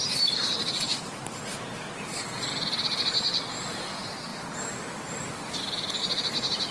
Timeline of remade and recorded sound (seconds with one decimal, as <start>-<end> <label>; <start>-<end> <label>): 0.0-6.7 recorded